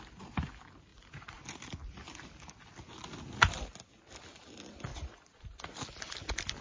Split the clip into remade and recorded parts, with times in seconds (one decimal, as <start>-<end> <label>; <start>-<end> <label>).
0.0-0.9 recorded; 0.9-1.4 remade; 1.4-4.9 recorded; 4.9-5.7 remade; 5.7-6.6 recorded